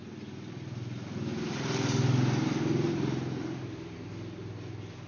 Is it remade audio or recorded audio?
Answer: recorded